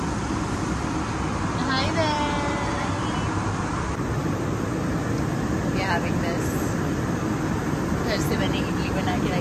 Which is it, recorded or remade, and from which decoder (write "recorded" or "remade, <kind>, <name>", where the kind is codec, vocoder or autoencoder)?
recorded